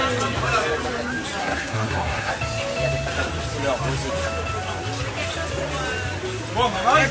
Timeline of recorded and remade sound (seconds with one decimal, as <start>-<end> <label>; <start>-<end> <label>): 0.0-1.4 recorded; 1.4-2.3 remade; 2.3-7.1 recorded